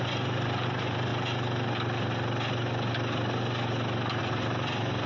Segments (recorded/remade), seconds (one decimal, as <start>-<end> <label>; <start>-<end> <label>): 0.0-1.1 remade; 1.1-4.2 recorded; 4.2-5.1 remade